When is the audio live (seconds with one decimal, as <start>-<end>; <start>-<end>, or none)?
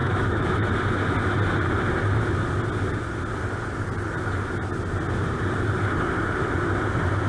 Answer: 0.7-7.3